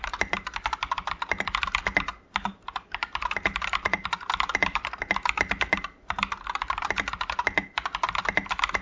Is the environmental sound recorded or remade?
recorded